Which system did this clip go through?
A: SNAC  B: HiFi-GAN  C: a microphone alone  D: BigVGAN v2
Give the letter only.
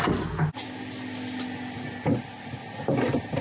C